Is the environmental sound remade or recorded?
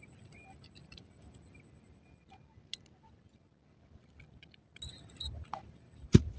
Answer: recorded